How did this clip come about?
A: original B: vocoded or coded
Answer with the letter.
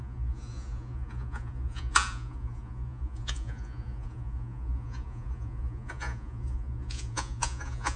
B